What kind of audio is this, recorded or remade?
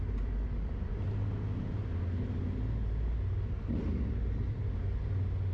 recorded